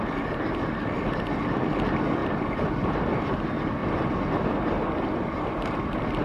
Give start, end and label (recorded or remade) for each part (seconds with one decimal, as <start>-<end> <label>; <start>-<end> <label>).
0.0-2.2 recorded; 2.2-3.0 remade; 3.0-6.2 recorded